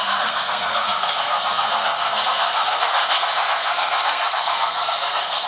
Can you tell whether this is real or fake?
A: fake